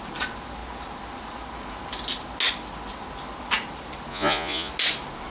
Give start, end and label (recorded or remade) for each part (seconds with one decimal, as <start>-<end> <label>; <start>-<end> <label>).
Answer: 0.0-4.1 recorded; 4.1-4.7 remade; 4.7-5.3 recorded